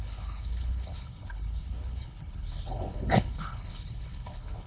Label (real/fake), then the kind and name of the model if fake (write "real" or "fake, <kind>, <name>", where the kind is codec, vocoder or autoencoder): fake, codec, HILCodec